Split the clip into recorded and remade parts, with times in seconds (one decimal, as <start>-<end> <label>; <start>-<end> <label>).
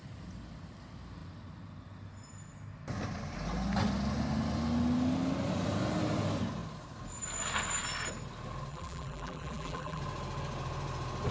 0.0-8.7 recorded; 8.7-10.0 remade; 10.0-11.3 recorded